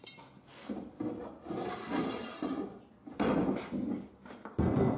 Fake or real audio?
real